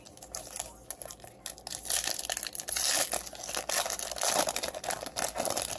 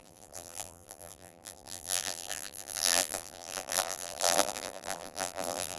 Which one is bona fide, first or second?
first